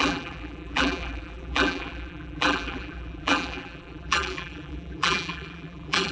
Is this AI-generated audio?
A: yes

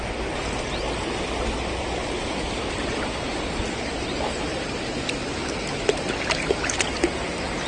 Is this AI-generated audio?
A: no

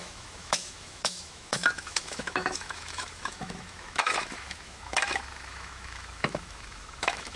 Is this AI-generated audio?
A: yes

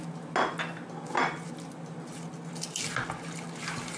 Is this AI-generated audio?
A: no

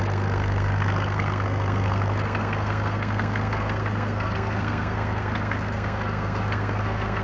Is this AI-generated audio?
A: yes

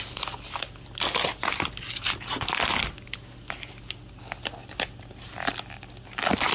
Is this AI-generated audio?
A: no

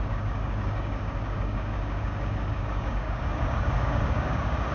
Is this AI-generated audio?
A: yes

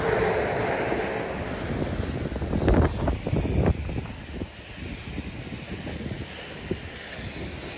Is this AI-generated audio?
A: no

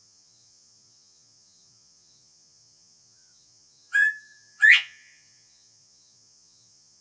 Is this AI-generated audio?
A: yes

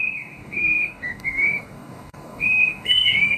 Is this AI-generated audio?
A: yes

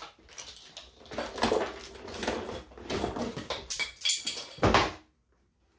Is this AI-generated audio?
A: no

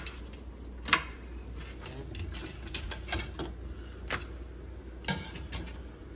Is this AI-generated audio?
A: no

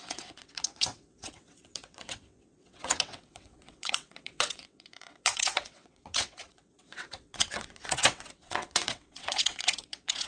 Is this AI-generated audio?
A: yes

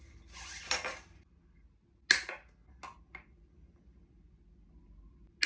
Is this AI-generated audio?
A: no